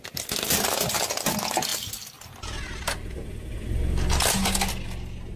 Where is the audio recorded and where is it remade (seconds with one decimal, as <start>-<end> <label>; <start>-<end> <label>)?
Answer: 0.0-5.4 recorded